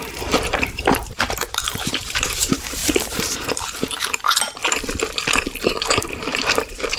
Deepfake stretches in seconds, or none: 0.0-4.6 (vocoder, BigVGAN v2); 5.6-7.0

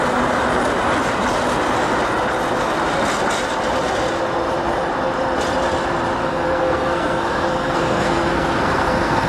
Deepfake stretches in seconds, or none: 6.2-9.3 (codec, SNAC)

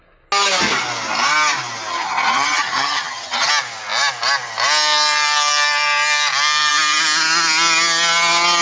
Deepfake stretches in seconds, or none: 1.9-3.5 (vocoder, HiFi-GAN)

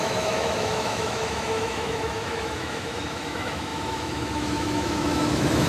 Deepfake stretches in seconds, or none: 0.0-5.7 (autoencoder, DAC-VAE)

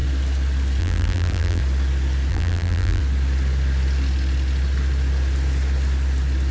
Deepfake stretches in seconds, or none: 0.8-1.6 (vocoder, BigVGAN v2); 2.3-3.0

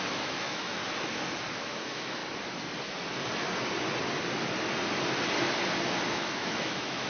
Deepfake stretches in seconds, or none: 0.0-0.8 (autoencoder, DAC-VAE); 1.5-2.2; 6.1-7.1

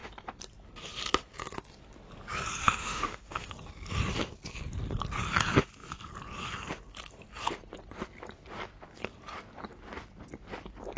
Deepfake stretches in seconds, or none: 2.6-3.5 (autoencoder, DAC-VAE)